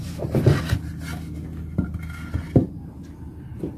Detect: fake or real real